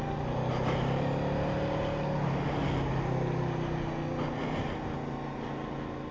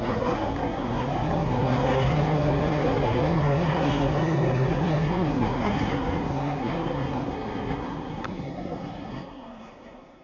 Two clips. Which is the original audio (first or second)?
first